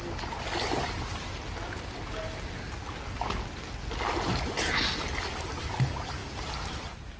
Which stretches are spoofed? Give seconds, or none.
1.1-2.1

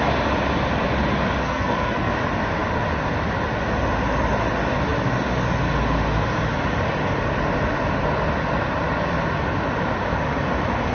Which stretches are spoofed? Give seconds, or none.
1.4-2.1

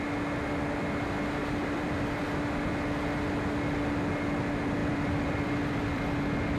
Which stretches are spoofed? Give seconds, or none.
1.4-2.2; 4.8-6.0